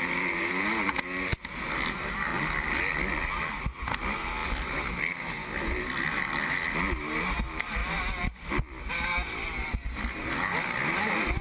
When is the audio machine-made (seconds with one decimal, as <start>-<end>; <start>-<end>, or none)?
none